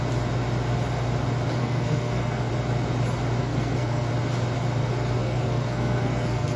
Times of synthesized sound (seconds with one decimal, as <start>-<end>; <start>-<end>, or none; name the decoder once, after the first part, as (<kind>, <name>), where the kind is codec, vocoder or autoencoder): 1.6-2.5 (codec, SNAC); 3.4-4.1; 4.8-6.6